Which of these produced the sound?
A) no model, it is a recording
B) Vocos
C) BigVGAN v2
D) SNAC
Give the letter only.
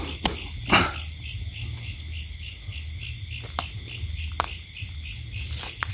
A